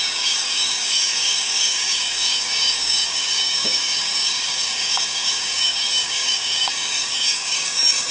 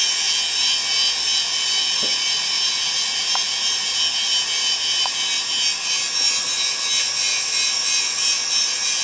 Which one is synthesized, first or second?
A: first